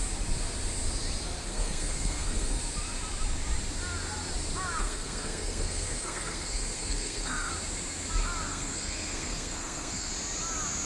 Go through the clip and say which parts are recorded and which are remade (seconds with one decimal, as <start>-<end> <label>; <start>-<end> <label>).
0.0-1.4 recorded; 1.4-2.6 remade; 2.6-4.8 recorded; 4.8-7.5 remade; 7.5-8.5 recorded; 8.5-10.1 remade; 10.1-10.9 recorded